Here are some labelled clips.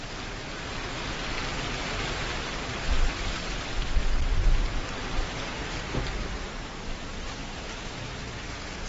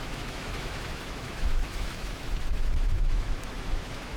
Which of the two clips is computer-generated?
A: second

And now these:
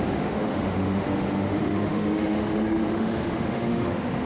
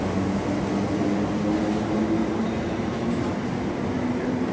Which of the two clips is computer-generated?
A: first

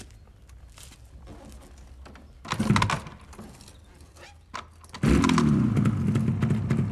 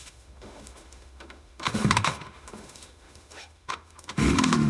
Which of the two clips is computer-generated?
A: second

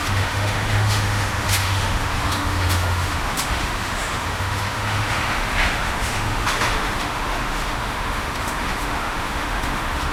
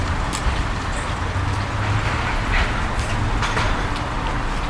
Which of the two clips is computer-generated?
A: first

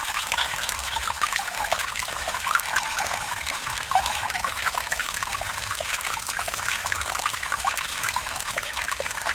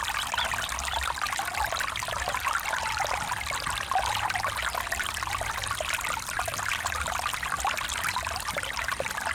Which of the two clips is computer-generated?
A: first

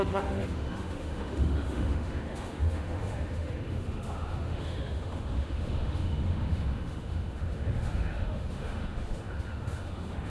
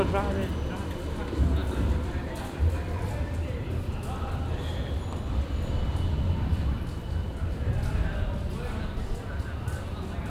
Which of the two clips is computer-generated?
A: first